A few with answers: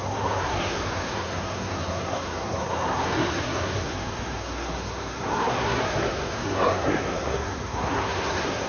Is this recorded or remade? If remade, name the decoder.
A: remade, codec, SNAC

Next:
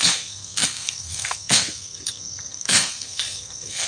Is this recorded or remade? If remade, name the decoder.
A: remade, codec, SNAC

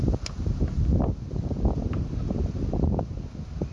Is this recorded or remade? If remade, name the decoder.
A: recorded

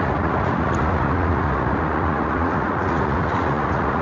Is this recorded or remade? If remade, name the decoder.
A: remade, vocoder, Vocos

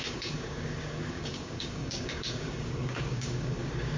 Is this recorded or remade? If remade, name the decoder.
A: remade, codec, DAC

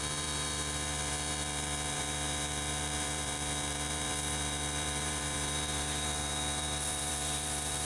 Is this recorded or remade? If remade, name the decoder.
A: remade, vocoder, BigVGAN v2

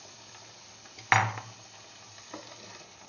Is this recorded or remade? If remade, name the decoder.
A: recorded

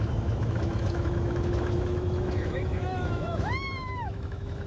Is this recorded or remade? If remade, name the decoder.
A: remade, autoencoder, DAC-VAE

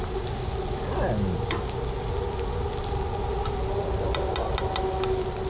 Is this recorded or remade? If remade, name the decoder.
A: recorded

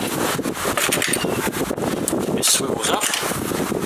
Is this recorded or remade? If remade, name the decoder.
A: recorded